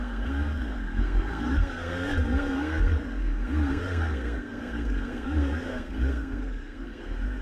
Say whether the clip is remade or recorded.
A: remade